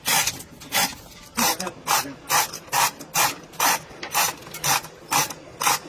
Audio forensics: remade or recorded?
recorded